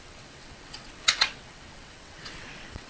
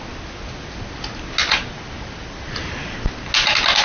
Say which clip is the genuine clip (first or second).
second